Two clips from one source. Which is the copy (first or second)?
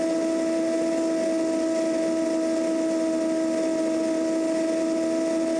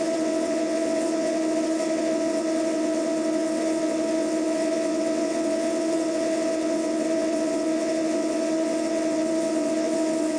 second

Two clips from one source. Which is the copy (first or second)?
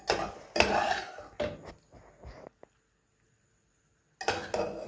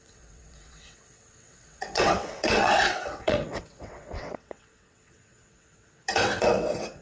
second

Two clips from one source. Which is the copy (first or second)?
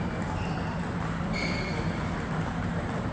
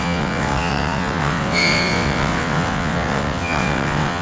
second